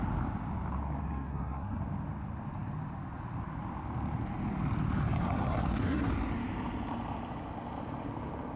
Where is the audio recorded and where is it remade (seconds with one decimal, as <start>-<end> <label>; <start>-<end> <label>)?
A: 0.0-1.0 recorded; 1.0-1.8 remade; 1.8-5.2 recorded; 5.2-6.1 remade; 6.1-8.6 recorded

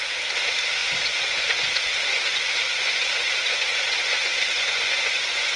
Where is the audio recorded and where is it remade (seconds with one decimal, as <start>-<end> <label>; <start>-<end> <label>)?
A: 0.0-0.8 recorded; 0.8-1.7 remade; 1.7-2.3 recorded; 2.3-5.6 remade